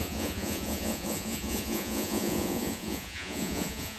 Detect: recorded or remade remade